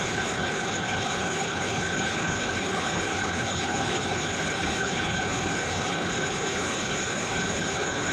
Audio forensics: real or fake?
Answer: fake